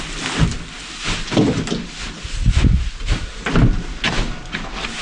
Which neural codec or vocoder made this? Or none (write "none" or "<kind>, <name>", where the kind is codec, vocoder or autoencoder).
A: none